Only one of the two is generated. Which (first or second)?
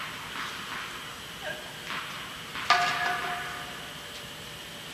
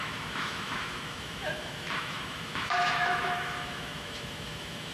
second